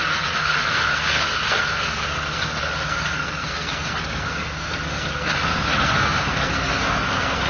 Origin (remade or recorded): remade